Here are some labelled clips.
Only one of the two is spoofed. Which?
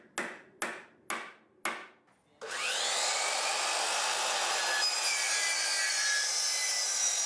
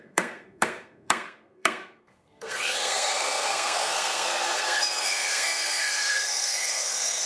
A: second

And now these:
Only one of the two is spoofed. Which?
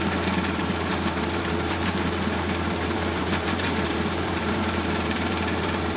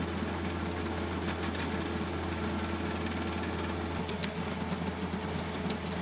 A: first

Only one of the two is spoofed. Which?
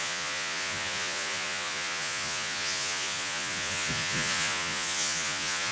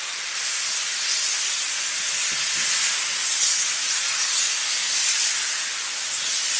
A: first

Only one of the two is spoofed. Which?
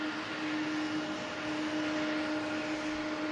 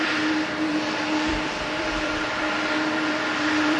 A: second